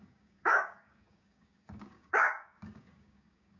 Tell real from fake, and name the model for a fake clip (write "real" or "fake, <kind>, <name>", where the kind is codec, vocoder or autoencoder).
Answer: fake, codec, DAC